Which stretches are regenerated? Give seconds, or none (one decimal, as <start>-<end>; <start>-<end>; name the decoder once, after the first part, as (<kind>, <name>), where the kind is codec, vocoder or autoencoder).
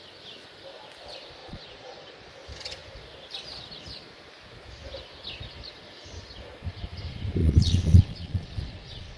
1.4-2.3 (vocoder, Vocos); 7.4-9.2